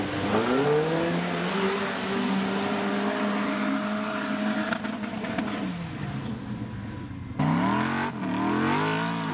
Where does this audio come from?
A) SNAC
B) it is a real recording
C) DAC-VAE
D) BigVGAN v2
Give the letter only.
B